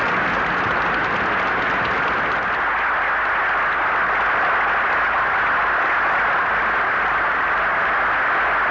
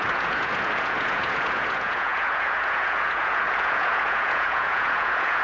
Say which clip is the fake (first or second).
second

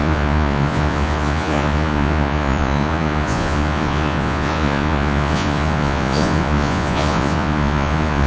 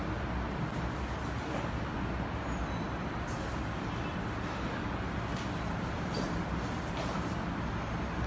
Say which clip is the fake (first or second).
first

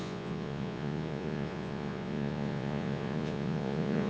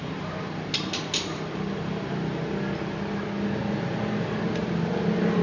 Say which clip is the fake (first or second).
first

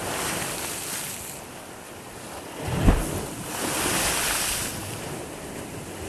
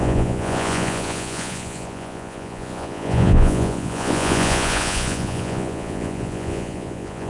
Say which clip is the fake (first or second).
second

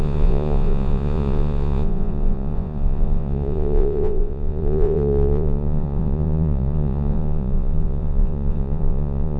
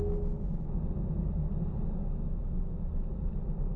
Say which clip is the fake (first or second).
first